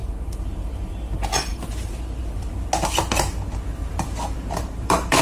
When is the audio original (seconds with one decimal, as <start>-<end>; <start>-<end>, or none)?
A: 0.9-1.5; 2.5-3.8